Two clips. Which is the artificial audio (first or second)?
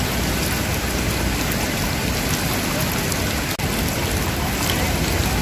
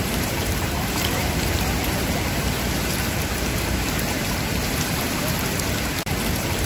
second